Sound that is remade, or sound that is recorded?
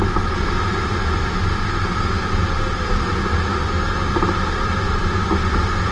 recorded